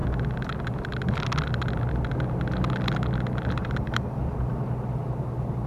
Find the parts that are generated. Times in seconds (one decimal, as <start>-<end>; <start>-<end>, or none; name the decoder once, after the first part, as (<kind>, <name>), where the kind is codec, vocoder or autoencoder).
3.6-4.2 (vocoder, BigVGAN v2)